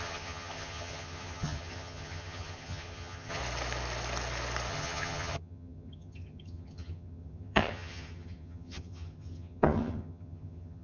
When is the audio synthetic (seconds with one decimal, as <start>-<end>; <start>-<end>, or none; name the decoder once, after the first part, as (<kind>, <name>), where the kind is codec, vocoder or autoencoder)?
0.0-3.4 (vocoder, HiFi-GAN); 4.7-10.8